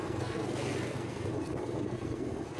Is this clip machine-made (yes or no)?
yes